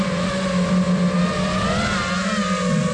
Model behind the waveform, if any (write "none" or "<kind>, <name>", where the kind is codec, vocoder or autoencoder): none